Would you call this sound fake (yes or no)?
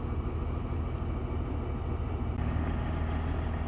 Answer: no